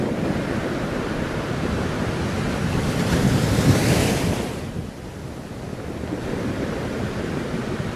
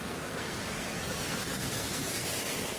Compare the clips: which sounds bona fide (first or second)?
first